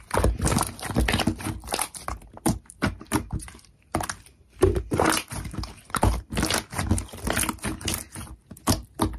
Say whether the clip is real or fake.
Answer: real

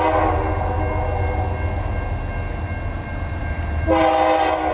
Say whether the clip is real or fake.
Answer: real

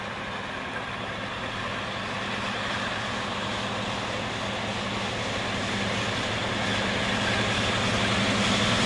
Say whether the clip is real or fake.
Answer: real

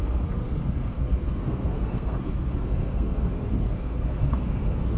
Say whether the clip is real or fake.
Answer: fake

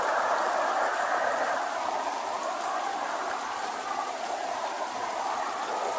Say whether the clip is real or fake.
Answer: real